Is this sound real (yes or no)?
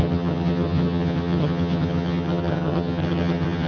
no